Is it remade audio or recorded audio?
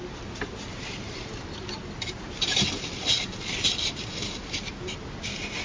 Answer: recorded